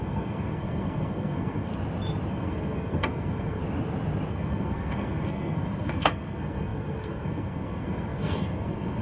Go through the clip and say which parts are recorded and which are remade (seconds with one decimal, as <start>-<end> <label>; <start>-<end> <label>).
0.0-1.7 remade; 1.7-2.3 recorded; 2.3-3.6 remade; 3.6-4.3 recorded; 4.3-9.0 remade